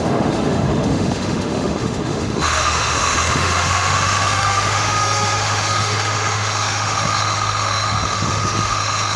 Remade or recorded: remade